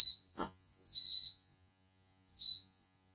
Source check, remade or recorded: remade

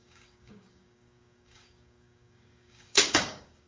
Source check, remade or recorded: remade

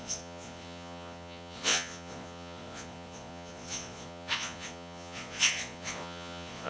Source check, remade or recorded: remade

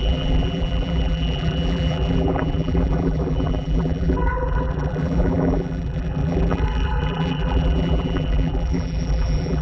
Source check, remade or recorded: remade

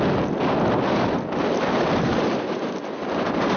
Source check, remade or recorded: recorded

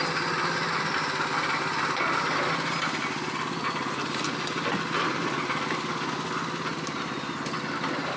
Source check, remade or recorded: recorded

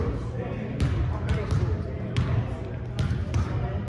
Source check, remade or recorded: recorded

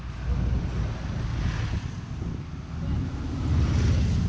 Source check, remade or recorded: recorded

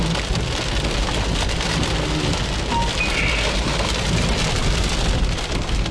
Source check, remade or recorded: recorded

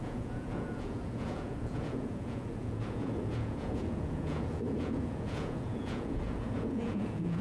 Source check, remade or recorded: remade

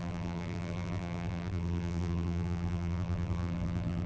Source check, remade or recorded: remade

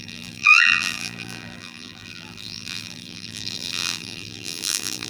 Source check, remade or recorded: remade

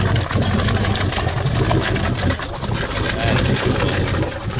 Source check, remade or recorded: recorded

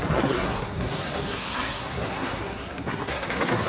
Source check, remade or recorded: remade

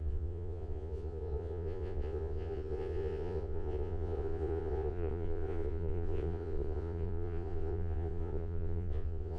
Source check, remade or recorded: remade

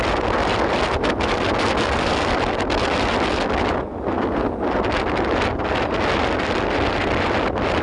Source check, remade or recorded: recorded